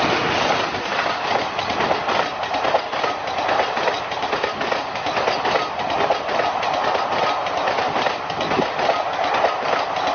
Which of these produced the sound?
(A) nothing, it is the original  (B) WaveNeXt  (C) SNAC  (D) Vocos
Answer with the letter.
A